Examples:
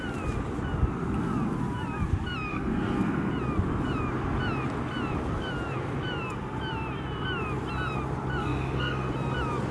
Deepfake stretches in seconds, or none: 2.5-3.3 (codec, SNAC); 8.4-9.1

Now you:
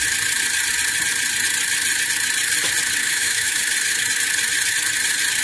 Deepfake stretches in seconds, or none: 3.0-3.6 (autoencoder, DAC-VAE)

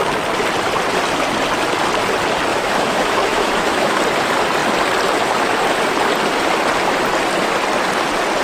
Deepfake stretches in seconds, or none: 2.5-4.0 (autoencoder, DAC-VAE)

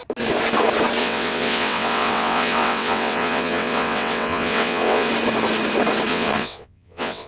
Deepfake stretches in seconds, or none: 1.0-5.1 (vocoder, WaveNeXt); 6.1-7.3

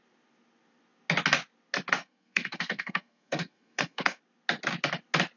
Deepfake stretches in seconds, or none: 2.0-4.2 (codec, SNAC)

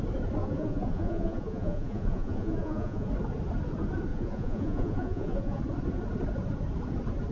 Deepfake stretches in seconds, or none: 0.4-3.1 (vocoder, Vocos); 4.1-5.6

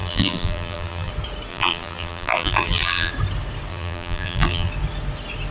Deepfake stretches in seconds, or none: 0.0-1.1 (vocoder, BigVGAN v2); 1.5-3.1; 3.7-4.7